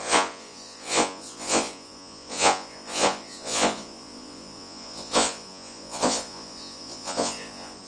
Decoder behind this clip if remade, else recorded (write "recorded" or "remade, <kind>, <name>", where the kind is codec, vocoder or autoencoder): remade, vocoder, Vocos